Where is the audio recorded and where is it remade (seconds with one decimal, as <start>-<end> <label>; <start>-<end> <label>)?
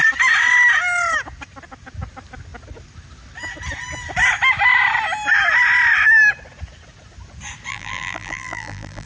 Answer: 0.0-7.7 recorded; 7.7-9.1 remade